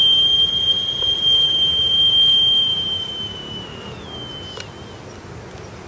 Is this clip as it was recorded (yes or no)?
yes